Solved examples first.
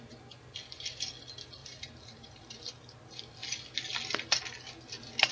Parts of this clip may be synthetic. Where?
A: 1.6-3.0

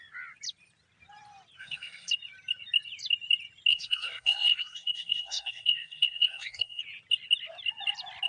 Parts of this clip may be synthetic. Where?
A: 1.6-2.1; 3.7-6.8

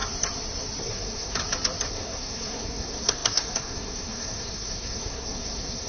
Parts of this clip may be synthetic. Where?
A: 0.8-1.4; 1.9-5.9

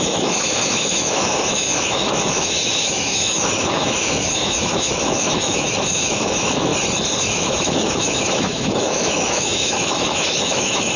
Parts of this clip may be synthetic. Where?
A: 0.0-6.7; 7.2-11.0

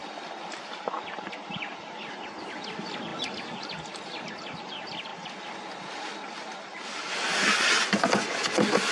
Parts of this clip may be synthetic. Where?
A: none

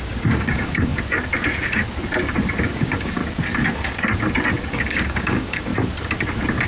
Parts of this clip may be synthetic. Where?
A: 0.0-0.9; 2.6-3.2; 4.7-5.7

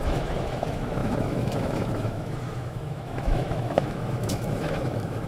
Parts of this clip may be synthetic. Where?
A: 0.0-5.3

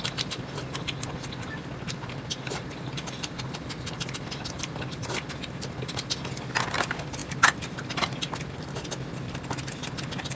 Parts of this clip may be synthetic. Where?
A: none